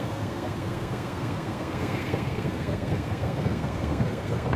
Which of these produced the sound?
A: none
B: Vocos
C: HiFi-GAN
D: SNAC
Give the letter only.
D